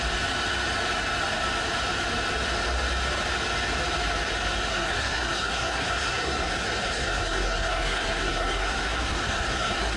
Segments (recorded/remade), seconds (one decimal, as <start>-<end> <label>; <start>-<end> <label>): 0.0-4.7 recorded; 4.7-10.0 remade